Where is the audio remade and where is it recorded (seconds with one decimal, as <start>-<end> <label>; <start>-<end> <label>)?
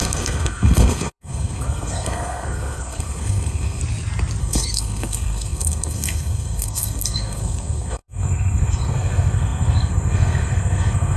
0.0-3.8 remade; 3.8-4.4 recorded; 4.4-11.2 remade